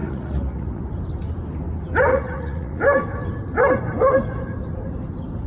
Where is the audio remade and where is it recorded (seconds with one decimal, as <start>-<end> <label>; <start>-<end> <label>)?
0.0-0.8 remade; 0.8-2.1 recorded; 2.1-2.8 remade; 2.8-5.5 recorded